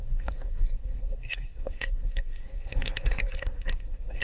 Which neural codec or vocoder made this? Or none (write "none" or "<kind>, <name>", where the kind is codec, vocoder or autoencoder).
codec, SNAC